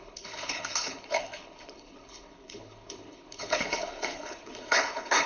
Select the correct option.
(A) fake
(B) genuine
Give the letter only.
A